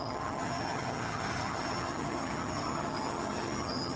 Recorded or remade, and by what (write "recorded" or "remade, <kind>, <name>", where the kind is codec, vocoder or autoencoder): remade, vocoder, HiFi-GAN